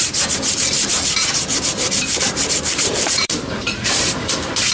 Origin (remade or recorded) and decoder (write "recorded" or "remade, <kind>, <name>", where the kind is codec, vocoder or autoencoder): remade, vocoder, BigVGAN v2